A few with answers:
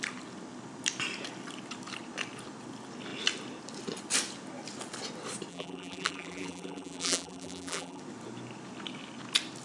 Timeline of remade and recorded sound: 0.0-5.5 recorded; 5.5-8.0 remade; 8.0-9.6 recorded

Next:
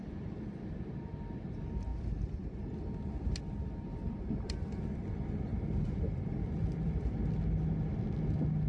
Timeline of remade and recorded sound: 0.0-1.9 recorded; 1.9-2.6 remade; 2.6-3.9 recorded; 3.9-4.8 remade; 4.8-5.5 recorded; 5.5-6.2 remade; 6.2-8.7 recorded

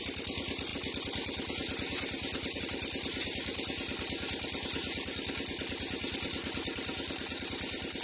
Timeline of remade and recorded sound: 0.0-0.7 recorded; 0.7-2.6 remade; 2.6-8.0 recorded

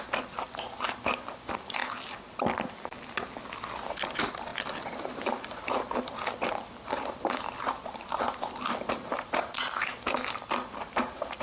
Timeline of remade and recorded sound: 0.0-1.8 remade; 1.8-3.5 recorded; 3.5-4.5 remade; 4.5-7.6 recorded; 7.6-11.4 remade

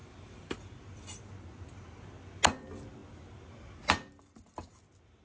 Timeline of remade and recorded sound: 0.0-0.6 remade; 0.6-5.2 recorded

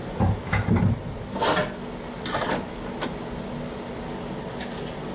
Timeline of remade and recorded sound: 0.0-1.3 remade; 1.3-5.1 recorded